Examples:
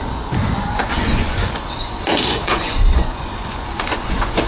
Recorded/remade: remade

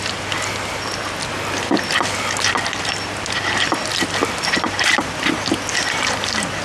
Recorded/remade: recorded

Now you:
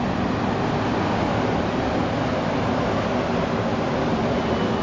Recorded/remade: recorded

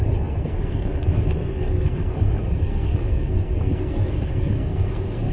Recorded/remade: remade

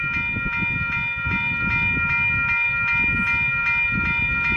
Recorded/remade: recorded